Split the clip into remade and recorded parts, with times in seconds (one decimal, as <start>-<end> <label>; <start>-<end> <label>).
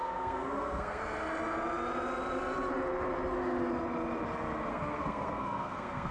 0.0-1.0 remade; 1.0-4.7 recorded; 4.7-6.1 remade